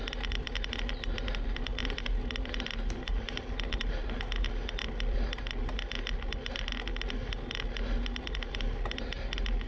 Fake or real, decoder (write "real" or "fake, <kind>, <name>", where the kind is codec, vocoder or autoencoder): real